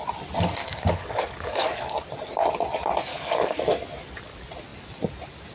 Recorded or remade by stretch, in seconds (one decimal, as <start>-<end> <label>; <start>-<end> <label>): 0.0-0.6 recorded; 0.6-1.9 remade; 1.9-3.1 recorded; 3.1-3.6 remade; 3.6-5.5 recorded